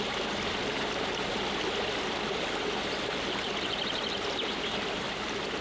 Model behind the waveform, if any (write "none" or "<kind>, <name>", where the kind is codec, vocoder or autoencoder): none